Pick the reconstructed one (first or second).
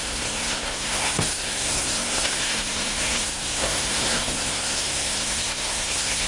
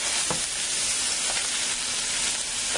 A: first